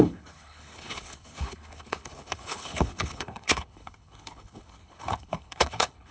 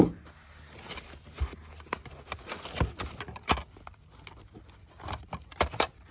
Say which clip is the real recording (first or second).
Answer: second